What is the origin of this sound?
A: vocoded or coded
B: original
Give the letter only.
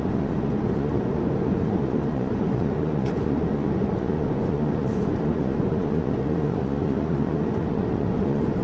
A